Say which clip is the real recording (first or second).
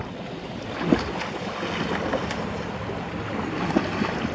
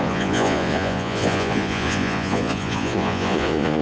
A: first